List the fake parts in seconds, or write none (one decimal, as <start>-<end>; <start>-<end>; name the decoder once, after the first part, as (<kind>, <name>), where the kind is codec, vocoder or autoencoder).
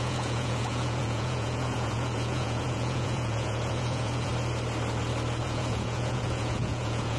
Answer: 0.0-4.3 (vocoder, Vocos); 5.4-7.2